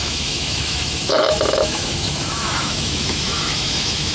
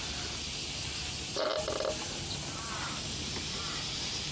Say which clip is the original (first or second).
second